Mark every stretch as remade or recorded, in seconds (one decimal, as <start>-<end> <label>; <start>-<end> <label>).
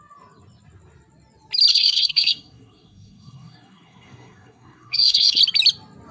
0.0-1.7 recorded; 1.7-5.4 remade; 5.4-6.1 recorded